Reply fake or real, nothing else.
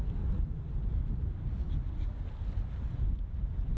real